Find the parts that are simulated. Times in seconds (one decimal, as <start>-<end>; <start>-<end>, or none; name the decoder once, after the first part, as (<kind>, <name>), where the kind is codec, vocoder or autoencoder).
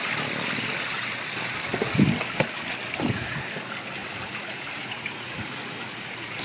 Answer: 4.0-6.4 (vocoder, Vocos)